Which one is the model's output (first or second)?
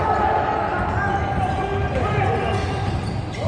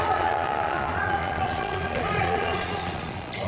second